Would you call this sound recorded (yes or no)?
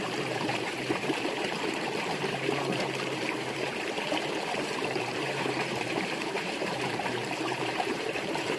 no